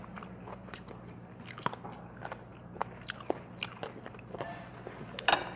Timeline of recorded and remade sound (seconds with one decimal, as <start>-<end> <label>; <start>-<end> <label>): 0.0-5.6 recorded